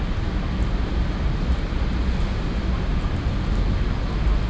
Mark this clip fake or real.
real